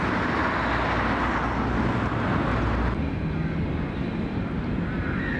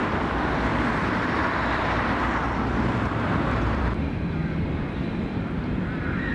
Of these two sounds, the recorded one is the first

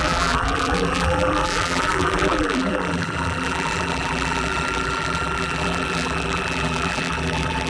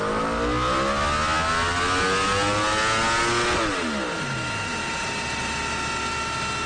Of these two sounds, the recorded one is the second